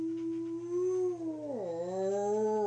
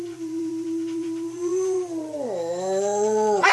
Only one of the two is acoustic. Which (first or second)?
first